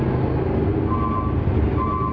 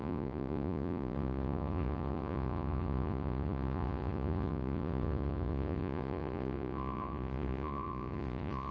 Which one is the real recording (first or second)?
first